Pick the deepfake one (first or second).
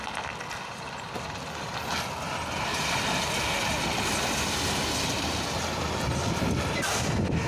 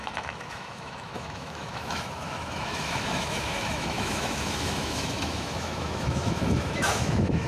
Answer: second